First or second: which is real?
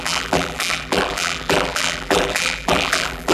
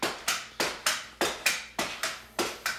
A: second